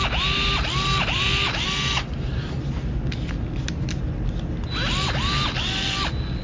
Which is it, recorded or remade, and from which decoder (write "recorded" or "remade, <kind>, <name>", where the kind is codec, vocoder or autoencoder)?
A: recorded